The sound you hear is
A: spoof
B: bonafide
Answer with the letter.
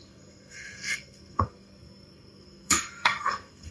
A